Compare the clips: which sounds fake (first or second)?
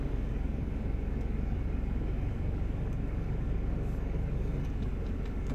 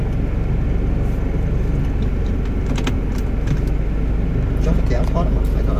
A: first